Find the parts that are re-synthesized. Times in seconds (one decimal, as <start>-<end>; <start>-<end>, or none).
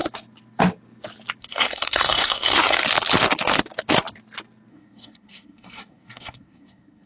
1.4-2.8; 4.7-7.1